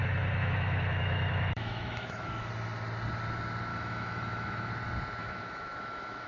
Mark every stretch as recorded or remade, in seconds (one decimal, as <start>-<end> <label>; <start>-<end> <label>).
0.0-2.5 remade; 2.5-3.7 recorded; 3.7-4.7 remade; 4.7-5.2 recorded; 5.2-6.3 remade